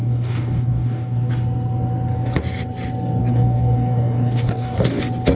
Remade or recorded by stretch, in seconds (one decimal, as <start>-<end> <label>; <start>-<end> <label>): 0.0-1.3 remade; 1.3-3.2 recorded; 3.2-5.0 remade; 5.0-5.4 recorded

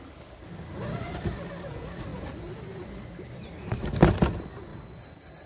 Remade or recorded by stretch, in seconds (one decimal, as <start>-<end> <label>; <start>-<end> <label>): 0.0-2.1 recorded; 2.1-2.9 remade; 2.9-4.7 recorded; 4.7-5.5 remade

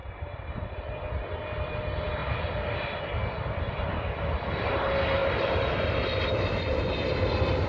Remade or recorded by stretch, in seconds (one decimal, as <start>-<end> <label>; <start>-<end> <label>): 0.0-2.2 recorded; 2.2-3.0 remade; 3.0-5.2 recorded; 5.2-6.2 remade; 6.2-7.7 recorded

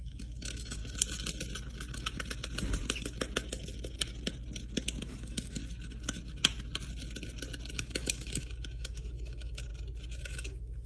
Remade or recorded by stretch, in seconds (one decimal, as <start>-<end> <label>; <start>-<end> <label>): 0.0-0.8 remade; 0.8-5.0 recorded; 5.0-5.6 remade; 5.6-7.7 recorded; 7.7-9.7 remade; 9.7-10.2 recorded; 10.2-10.9 remade

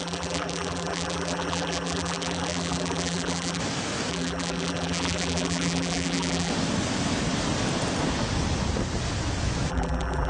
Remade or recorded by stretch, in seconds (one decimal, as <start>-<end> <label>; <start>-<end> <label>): 0.0-3.6 remade; 3.6-4.1 recorded; 4.1-6.5 remade; 6.5-9.7 recorded; 9.7-10.3 remade

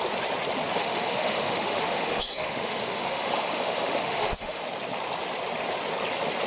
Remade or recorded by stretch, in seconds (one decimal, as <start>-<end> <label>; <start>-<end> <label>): 0.0-0.7 recorded; 0.7-4.6 remade; 4.6-6.5 recorded

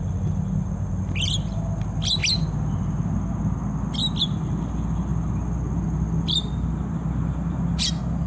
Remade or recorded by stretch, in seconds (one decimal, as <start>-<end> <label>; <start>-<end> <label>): 0.0-2.2 remade; 2.2-4.2 recorded; 4.2-8.3 remade

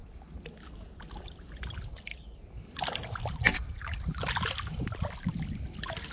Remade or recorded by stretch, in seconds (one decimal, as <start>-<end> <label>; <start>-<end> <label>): 0.0-6.1 recorded